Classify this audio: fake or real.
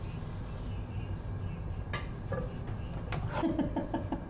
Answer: real